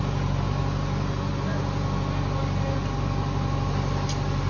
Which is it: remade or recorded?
recorded